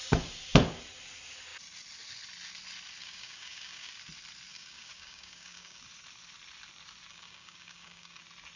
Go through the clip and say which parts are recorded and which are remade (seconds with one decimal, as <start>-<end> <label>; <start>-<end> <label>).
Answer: 0.0-3.0 recorded; 3.0-3.9 remade; 3.9-4.5 recorded; 4.5-5.8 remade; 5.8-7.1 recorded; 7.1-8.2 remade; 8.2-8.6 recorded